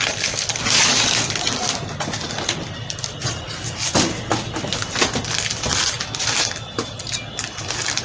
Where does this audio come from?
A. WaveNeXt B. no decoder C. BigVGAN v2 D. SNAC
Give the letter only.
B